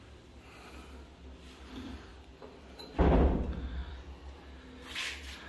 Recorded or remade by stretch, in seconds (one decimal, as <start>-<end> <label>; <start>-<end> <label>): 0.0-5.5 recorded